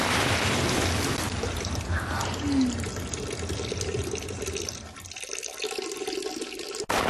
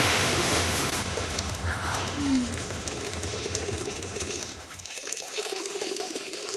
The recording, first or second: first